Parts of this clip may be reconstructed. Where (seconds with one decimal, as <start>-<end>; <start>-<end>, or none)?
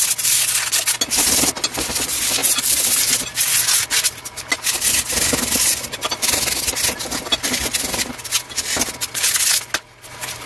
2.4-3.1